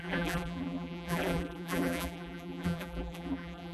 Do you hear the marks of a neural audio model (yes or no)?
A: yes